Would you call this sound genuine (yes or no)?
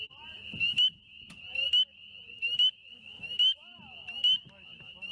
yes